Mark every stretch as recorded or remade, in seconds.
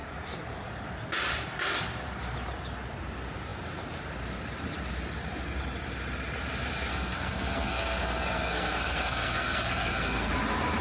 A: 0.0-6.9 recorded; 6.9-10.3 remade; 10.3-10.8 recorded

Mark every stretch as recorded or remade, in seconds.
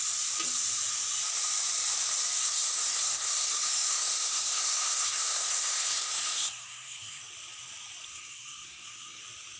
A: 0.0-2.4 recorded; 2.4-7.2 remade; 7.2-8.1 recorded; 8.1-9.2 remade; 9.2-9.6 recorded